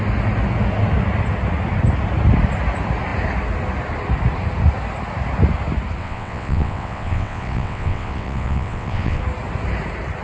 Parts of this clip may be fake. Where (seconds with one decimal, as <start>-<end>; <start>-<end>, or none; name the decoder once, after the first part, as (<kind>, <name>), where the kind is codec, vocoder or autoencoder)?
6.0-9.2 (vocoder, WaveNeXt)